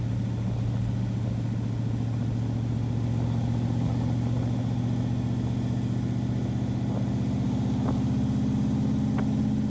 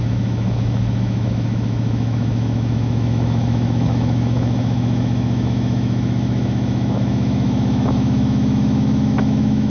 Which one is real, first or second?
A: first